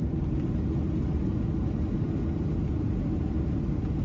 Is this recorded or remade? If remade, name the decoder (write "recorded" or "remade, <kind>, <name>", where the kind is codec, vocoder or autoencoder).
recorded